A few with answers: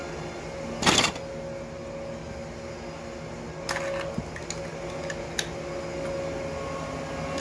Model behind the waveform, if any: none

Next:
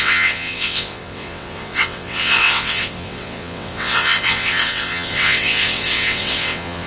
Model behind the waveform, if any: vocoder, WaveNeXt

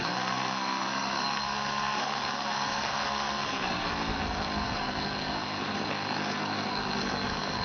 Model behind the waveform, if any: codec, SNAC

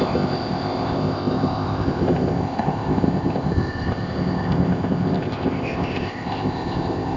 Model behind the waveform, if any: codec, ZipCodec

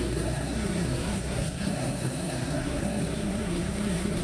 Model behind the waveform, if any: codec, SNAC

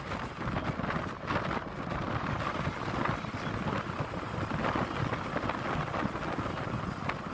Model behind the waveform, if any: none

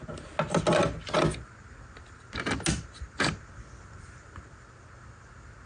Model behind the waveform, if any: none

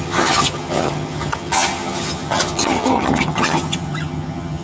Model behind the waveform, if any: vocoder, HiFi-GAN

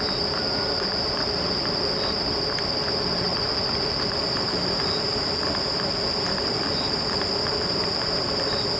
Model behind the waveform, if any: vocoder, BigVGAN v2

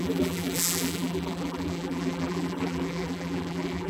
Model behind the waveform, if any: vocoder, BigVGAN v2